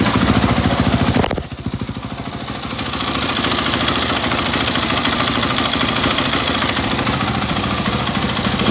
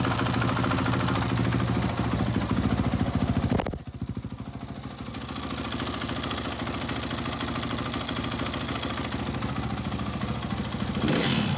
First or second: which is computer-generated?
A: first